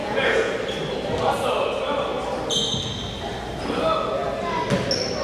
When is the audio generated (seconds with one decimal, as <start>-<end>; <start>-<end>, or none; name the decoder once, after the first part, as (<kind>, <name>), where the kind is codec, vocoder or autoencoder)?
0.0-0.5 (vocoder, Vocos)